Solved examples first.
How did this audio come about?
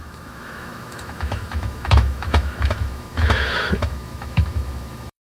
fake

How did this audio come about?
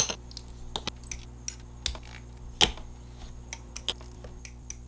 real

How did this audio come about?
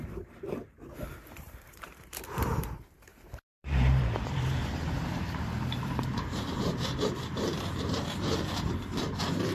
fake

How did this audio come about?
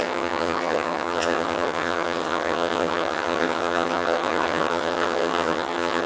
fake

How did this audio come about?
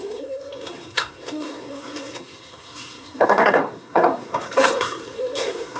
fake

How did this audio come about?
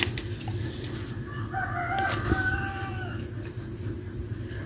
real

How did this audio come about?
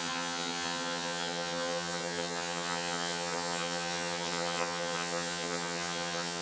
fake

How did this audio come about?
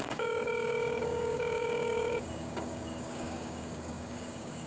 fake